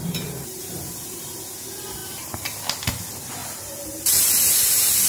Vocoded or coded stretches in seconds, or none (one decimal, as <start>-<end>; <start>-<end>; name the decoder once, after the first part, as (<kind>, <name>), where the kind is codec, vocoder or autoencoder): 0.0-1.2 (vocoder, BigVGAN v2); 2.0-2.6; 3.4-5.1